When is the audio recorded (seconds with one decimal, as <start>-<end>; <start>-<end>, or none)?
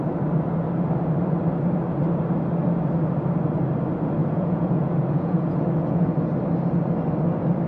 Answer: 0.0-4.2; 6.1-7.7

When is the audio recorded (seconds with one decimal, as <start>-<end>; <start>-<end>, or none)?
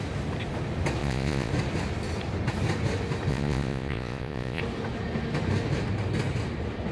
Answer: 0.0-1.0; 1.5-3.3; 4.6-6.9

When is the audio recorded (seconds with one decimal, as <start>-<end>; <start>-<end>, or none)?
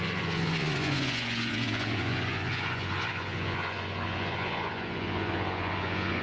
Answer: none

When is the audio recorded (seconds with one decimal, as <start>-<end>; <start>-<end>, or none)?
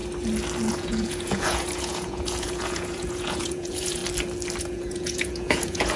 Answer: 0.0-0.7; 4.0-4.6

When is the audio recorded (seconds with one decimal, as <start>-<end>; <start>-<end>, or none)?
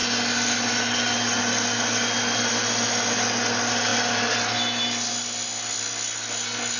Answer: 0.0-6.8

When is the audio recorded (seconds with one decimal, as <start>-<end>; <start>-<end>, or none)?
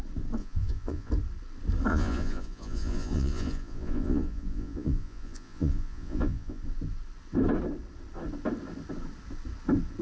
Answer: 0.0-0.4; 1.1-1.9; 6.6-10.0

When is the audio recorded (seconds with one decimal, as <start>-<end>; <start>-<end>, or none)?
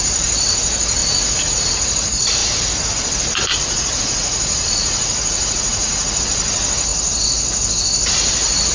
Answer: 0.0-1.0; 1.7-3.5; 6.2-8.7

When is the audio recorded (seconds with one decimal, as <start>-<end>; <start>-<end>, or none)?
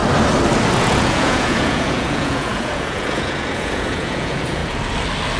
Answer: 0.0-0.8; 4.6-5.4